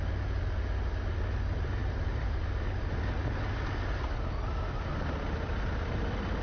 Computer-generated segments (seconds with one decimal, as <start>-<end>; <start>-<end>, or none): 1.8-2.4